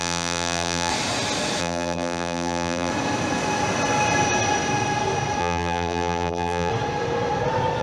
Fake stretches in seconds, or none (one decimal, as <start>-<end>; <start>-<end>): 0.0-0.9; 1.6-2.9; 5.4-6.7